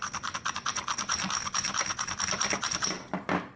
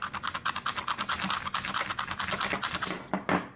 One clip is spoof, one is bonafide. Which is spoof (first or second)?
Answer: first